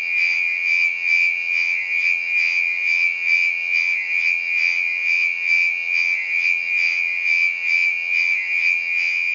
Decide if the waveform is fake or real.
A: fake